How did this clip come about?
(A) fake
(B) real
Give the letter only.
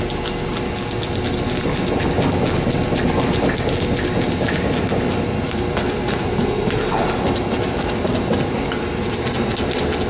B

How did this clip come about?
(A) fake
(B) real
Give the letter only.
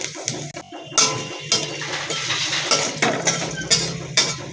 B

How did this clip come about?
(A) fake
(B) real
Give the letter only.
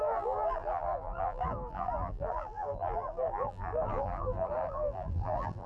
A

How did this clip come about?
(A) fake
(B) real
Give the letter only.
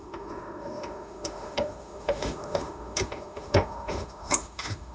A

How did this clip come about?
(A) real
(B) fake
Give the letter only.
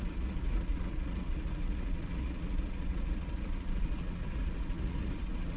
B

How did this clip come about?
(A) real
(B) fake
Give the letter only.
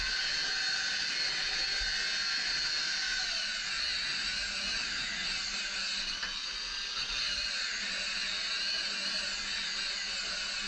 A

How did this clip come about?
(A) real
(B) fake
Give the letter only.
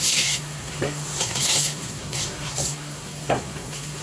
B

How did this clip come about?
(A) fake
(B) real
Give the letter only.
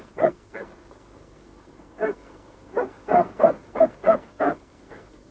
A